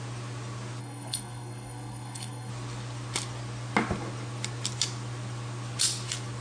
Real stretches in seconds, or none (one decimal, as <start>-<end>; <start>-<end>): 0.0-0.8; 2.5-6.4